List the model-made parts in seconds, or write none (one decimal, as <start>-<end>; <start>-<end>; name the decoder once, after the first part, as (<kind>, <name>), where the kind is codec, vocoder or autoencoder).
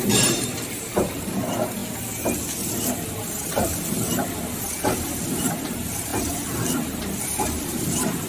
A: 0.0-1.8 (vocoder, BigVGAN v2); 5.4-6.1; 7.2-8.3